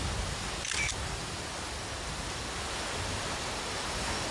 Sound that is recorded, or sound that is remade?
recorded